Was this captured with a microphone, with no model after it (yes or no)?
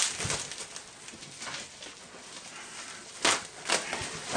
yes